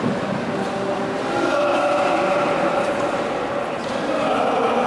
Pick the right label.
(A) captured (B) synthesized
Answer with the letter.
A